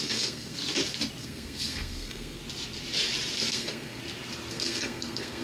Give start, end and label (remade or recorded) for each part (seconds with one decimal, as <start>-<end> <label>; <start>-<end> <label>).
0.0-0.6 remade; 0.6-1.2 recorded; 1.2-2.4 remade; 2.4-3.5 recorded; 3.5-4.0 remade; 4.0-4.5 recorded; 4.5-5.4 remade